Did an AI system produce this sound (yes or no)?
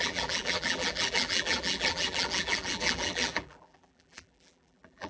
yes